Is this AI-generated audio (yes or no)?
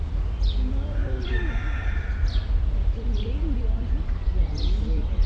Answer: yes